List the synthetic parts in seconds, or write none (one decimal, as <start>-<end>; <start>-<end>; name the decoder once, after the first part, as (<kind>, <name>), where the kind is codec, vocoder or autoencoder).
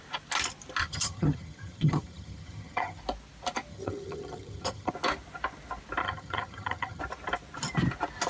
0.8-3.0 (vocoder, HiFi-GAN); 3.7-4.9; 6.0-7.0